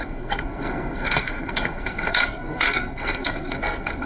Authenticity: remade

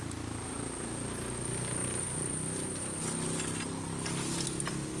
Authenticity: recorded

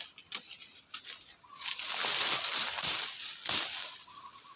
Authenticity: recorded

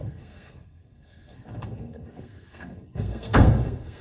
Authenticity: remade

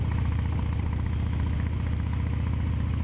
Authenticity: recorded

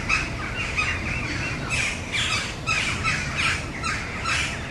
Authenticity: recorded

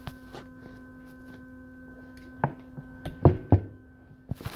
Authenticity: recorded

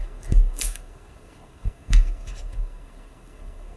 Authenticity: remade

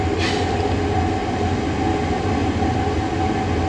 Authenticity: recorded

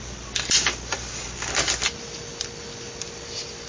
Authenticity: recorded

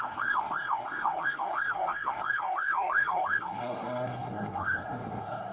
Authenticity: remade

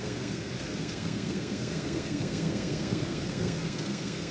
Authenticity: remade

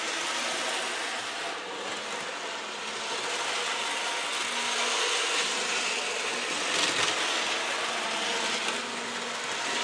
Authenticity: recorded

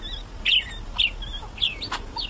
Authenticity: recorded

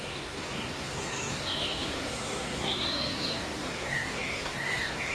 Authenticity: remade